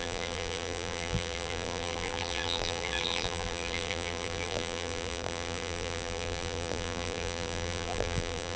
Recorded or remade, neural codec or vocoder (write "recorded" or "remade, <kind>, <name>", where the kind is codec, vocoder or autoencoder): remade, vocoder, BigVGAN v2